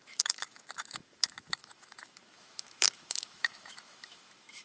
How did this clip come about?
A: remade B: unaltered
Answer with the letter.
A